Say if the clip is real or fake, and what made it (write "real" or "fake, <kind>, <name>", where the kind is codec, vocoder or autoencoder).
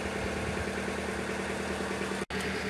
real